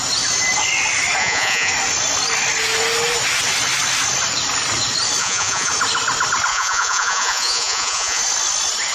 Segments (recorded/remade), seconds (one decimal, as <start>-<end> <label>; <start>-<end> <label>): 0.0-1.2 recorded; 1.2-1.7 remade; 1.7-5.2 recorded; 5.2-5.7 remade; 5.7-6.5 recorded; 6.5-8.2 remade; 8.2-8.9 recorded